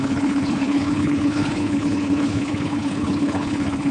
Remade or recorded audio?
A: remade